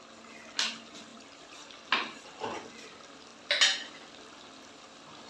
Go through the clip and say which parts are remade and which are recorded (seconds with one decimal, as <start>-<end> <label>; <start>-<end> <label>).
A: 0.0-5.3 recorded